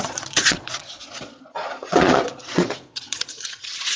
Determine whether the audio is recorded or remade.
remade